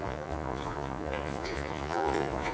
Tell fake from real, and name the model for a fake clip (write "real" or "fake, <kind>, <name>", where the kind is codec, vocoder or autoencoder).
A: fake, vocoder, Vocos